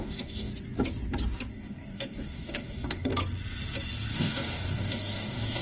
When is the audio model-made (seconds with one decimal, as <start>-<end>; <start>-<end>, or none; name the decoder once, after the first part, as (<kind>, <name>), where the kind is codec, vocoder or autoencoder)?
0.0-0.5 (codec, DAC); 1.5-3.1; 4.1-5.6

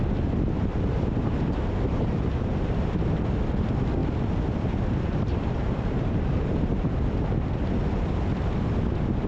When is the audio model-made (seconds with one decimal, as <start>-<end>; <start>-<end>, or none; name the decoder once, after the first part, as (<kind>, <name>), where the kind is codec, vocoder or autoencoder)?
0.9-2.9 (vocoder, BigVGAN v2); 5.3-7.5

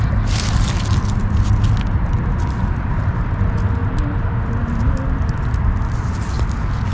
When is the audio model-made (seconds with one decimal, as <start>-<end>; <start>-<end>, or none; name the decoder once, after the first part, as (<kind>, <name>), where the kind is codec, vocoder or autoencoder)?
none

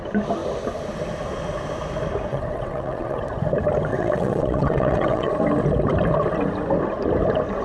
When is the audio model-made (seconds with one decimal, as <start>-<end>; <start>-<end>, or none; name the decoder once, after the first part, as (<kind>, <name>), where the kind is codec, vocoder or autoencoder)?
2.3-3.2 (vocoder, WaveNeXt); 3.9-5.3

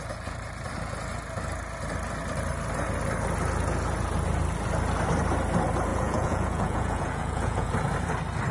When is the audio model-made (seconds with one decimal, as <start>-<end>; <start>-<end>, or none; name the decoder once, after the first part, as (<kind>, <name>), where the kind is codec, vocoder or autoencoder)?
5.9-7.7 (vocoder, Vocos)

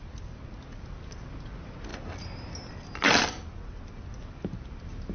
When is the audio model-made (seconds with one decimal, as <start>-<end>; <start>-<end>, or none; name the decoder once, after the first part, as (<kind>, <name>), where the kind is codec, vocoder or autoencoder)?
none